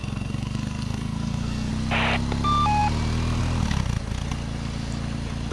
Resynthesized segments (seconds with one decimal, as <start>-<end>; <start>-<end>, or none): 0.0-1.7